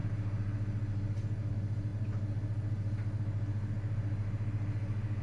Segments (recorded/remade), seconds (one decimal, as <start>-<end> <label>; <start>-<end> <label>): 0.0-5.2 recorded